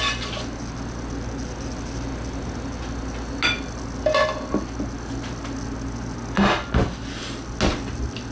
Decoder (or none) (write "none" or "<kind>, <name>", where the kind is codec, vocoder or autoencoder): none